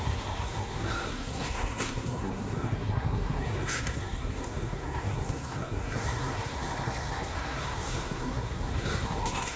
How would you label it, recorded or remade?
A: remade